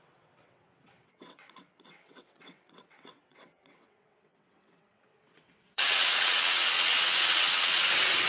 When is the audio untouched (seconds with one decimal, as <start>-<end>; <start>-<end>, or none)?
none